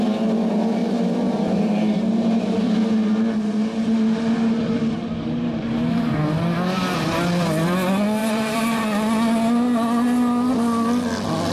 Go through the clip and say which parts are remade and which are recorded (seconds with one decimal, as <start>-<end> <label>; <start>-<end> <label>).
0.0-0.8 recorded; 0.8-2.6 remade; 2.6-8.2 recorded; 8.2-8.8 remade; 8.8-11.5 recorded

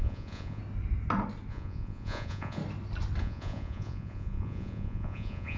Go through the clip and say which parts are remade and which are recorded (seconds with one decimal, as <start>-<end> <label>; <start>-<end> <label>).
0.0-0.6 remade; 0.6-1.5 recorded; 1.5-2.6 remade; 2.6-3.2 recorded; 3.2-5.6 remade

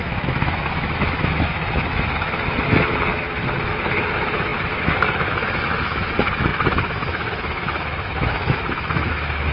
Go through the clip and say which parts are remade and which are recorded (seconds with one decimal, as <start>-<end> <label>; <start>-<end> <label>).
0.0-9.5 remade

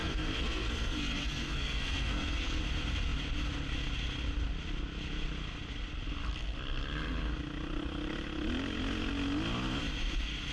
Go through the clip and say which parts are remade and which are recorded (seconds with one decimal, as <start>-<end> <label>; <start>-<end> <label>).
0.0-2.6 remade; 2.6-10.5 recorded

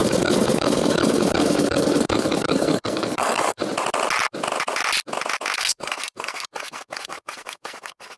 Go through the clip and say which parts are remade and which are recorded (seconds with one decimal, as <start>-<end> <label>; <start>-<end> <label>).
0.0-3.6 remade; 3.6-5.6 recorded; 5.6-8.2 remade